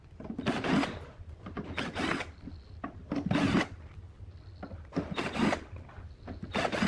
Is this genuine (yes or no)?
yes